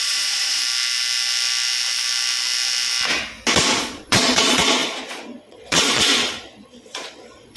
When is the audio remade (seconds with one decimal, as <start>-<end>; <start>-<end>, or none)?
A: 0.0-0.6; 3.8-7.6